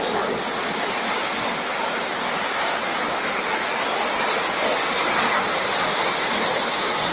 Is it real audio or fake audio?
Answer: real